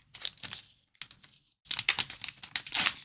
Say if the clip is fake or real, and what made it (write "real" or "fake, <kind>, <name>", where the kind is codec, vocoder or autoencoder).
real